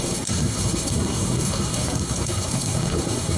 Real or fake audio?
fake